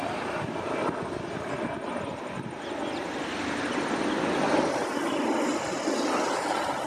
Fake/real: real